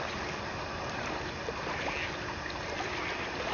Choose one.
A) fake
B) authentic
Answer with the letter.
B